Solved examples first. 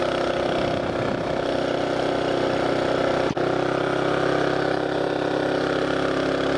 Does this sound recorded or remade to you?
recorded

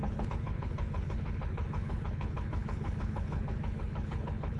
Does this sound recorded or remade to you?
remade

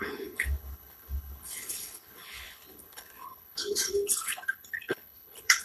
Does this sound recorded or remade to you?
remade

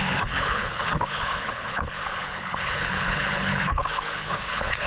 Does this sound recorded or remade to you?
remade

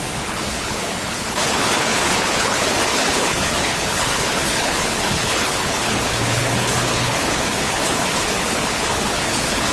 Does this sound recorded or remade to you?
remade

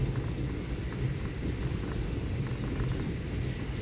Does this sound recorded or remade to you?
recorded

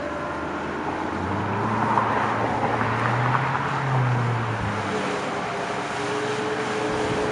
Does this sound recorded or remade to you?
recorded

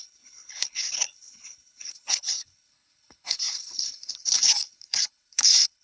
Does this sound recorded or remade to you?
remade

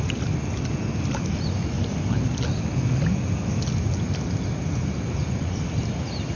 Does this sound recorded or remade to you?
recorded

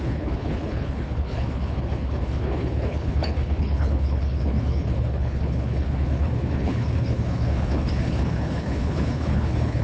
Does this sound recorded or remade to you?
remade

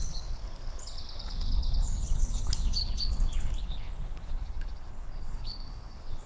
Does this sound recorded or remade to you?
remade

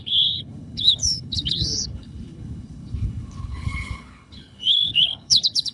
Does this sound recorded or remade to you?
remade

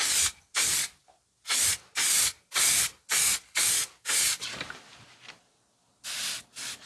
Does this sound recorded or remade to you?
recorded